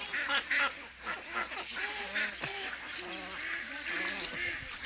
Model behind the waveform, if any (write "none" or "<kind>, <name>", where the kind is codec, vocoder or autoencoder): none